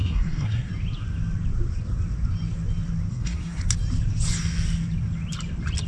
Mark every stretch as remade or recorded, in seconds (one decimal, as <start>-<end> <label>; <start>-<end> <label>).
0.0-0.7 remade; 0.7-3.1 recorded; 3.1-3.6 remade; 3.6-5.9 recorded